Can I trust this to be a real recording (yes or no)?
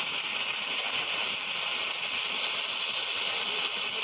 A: yes